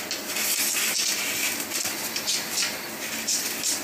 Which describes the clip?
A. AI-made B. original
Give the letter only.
B